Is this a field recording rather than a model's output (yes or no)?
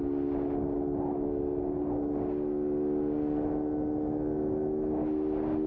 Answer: yes